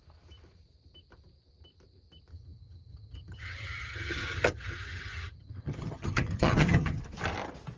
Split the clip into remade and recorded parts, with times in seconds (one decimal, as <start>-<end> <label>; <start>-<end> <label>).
0.0-2.3 recorded; 2.3-7.0 remade; 7.0-7.8 recorded